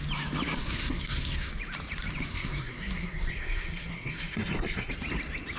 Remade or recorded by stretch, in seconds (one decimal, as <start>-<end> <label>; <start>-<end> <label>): 0.0-0.6 recorded; 0.6-1.5 remade; 1.5-2.3 recorded; 2.3-4.9 remade; 4.9-5.6 recorded